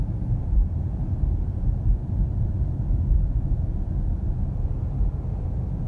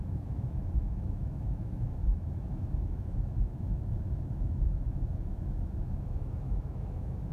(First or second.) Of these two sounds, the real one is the first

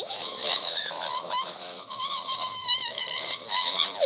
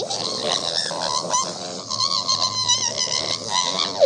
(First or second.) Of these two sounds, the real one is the second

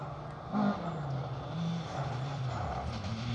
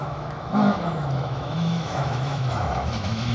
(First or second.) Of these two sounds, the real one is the first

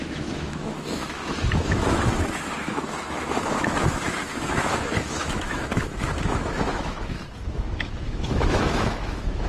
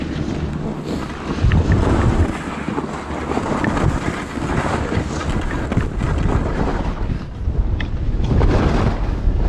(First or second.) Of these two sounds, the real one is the second